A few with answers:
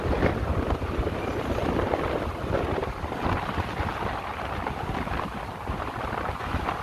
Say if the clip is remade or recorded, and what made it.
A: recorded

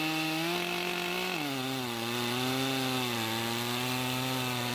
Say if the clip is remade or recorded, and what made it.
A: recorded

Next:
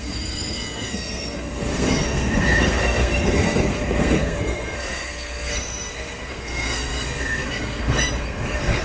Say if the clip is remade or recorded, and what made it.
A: remade, codec, SNAC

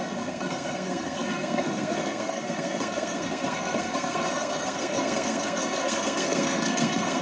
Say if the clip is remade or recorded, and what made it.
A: remade, codec, SNAC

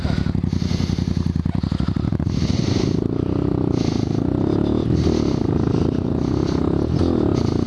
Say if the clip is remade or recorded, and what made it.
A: recorded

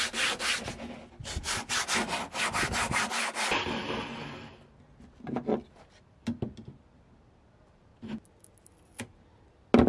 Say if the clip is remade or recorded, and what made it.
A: recorded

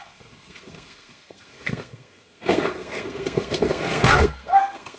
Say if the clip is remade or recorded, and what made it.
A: remade, codec, SNAC